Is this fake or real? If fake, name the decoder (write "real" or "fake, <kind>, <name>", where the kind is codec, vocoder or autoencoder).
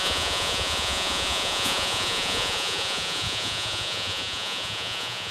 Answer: fake, vocoder, Vocos